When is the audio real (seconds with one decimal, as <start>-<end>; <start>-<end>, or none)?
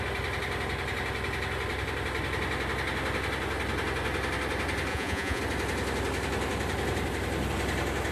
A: 0.0-4.9; 5.4-8.1